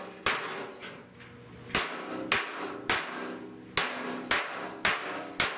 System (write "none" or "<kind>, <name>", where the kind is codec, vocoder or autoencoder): none